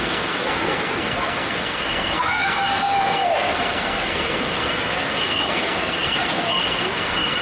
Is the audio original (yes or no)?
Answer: no